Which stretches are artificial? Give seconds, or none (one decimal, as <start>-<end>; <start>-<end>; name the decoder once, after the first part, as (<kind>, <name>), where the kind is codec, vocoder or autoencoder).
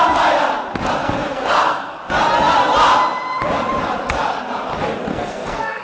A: 1.0-2.0 (codec, SNAC); 5.1-5.8